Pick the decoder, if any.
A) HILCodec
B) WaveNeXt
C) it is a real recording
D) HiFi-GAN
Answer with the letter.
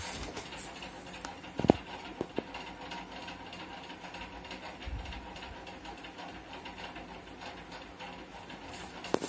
C